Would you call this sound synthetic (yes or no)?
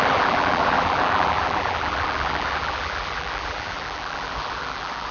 yes